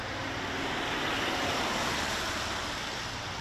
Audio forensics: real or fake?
real